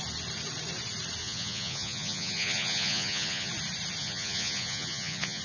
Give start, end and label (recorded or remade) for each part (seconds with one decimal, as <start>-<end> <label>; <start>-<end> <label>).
0.0-1.2 recorded; 1.2-3.5 remade; 3.5-4.0 recorded; 4.0-5.4 remade